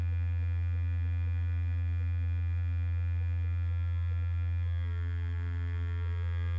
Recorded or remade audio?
remade